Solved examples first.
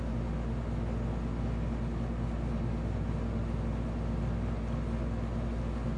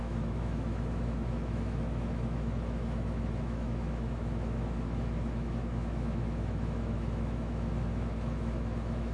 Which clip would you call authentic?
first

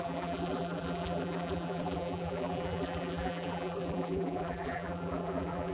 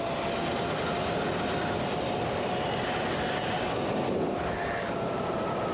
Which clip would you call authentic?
second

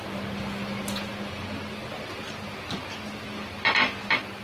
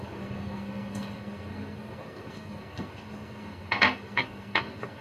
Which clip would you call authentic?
first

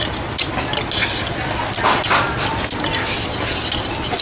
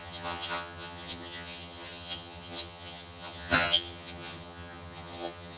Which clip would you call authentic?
first